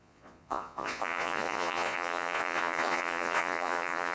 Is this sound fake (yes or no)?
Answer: yes